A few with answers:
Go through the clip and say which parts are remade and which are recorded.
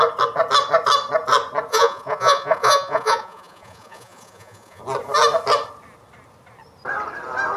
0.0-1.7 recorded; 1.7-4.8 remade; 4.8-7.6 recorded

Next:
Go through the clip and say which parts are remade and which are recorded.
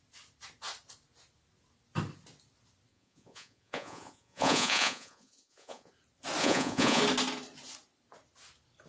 0.0-2.9 recorded; 2.9-5.9 remade; 5.9-6.4 recorded; 6.4-7.0 remade; 7.0-8.9 recorded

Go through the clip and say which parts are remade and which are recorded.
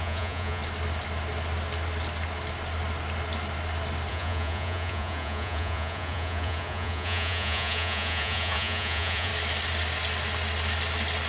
0.0-0.6 remade; 0.6-4.1 recorded; 4.1-9.3 remade; 9.3-11.3 recorded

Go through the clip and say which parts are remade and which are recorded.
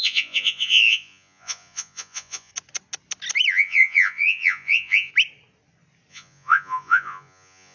0.0-2.5 remade; 2.5-3.5 recorded; 3.5-5.1 remade; 5.1-6.1 recorded; 6.1-7.7 remade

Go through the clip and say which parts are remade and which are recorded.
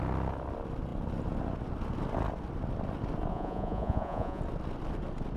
0.0-3.3 recorded; 3.3-4.4 remade; 4.4-5.4 recorded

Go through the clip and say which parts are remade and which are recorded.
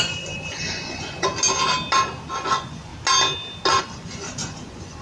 0.0-1.3 remade; 1.3-2.5 recorded; 2.5-2.9 remade; 2.9-3.8 recorded; 3.8-5.0 remade